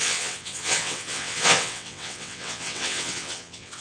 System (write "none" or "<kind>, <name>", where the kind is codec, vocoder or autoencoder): vocoder, WaveNeXt